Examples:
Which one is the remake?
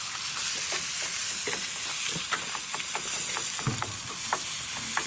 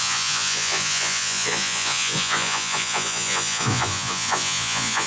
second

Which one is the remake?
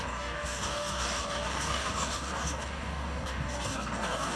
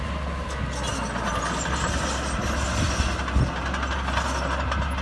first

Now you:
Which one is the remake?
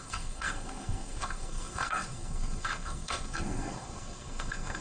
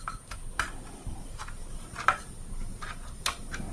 first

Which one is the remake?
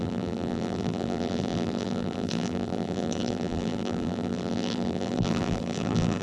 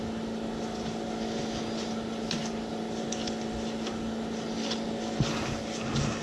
first